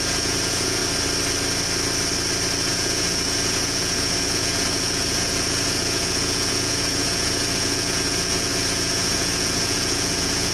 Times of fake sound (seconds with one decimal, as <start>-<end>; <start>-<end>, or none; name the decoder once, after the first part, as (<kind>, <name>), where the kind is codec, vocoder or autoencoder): 0.0-0.8 (vocoder, Vocos); 2.7-10.5